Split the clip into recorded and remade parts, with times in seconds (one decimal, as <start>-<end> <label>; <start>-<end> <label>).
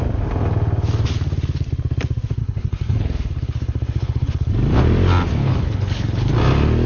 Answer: 0.0-2.4 recorded; 2.4-4.5 remade; 4.5-5.4 recorded; 5.4-6.3 remade; 6.3-6.9 recorded